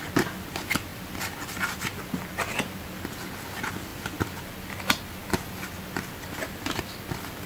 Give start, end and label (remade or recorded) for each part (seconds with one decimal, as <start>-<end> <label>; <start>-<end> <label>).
0.0-7.5 recorded